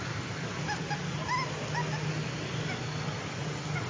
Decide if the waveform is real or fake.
real